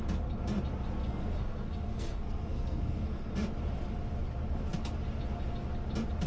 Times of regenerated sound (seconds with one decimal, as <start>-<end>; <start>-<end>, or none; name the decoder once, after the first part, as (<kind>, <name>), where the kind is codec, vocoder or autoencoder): 1.0-3.3 (codec, SNAC)